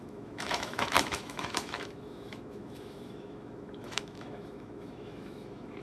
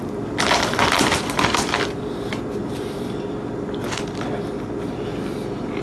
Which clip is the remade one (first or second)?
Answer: first